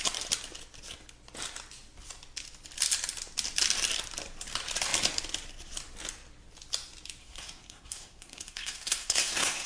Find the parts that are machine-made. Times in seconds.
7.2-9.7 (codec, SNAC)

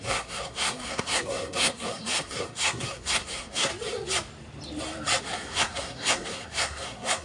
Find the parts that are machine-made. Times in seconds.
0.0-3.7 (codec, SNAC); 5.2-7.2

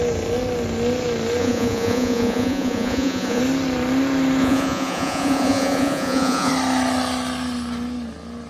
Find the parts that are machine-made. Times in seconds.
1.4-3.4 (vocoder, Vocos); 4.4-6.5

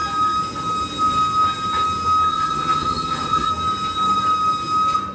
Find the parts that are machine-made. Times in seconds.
2.3-3.5 (vocoder, HiFi-GAN)